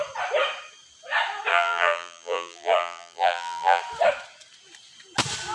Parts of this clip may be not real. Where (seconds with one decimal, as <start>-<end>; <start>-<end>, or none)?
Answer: 1.5-3.8